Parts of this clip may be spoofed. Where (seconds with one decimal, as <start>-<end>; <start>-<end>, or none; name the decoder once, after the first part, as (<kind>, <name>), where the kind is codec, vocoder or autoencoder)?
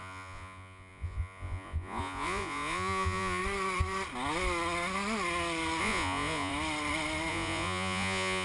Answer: 0.0-3.4 (vocoder, Vocos); 5.8-6.5; 7.3-8.4